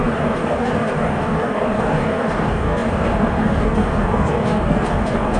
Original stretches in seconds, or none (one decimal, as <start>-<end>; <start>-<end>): none